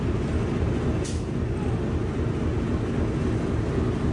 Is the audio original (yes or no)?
yes